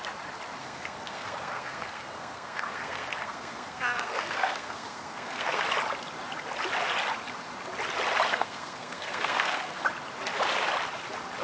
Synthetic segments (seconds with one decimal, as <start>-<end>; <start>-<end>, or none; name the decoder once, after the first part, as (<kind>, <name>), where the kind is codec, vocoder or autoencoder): 0.6-5.6 (codec, SNAC); 8.3-9.8